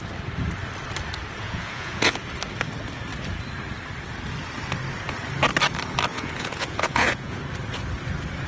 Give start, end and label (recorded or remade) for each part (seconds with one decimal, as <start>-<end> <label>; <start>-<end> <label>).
0.0-1.4 recorded; 1.4-2.3 remade; 2.3-6.1 recorded; 6.1-7.4 remade; 7.4-8.5 recorded